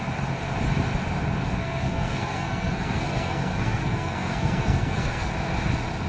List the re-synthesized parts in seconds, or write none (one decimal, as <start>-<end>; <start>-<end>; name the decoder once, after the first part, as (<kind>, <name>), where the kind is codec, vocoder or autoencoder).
1.6-5.3 (codec, SNAC)